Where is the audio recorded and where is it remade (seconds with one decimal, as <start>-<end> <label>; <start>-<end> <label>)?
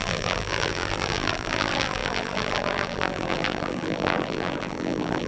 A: 0.0-5.3 remade